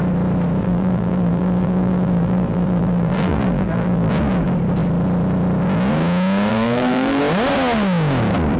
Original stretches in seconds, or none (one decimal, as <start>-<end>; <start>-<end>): 0.0-0.6; 4.1-6.5; 7.2-8.6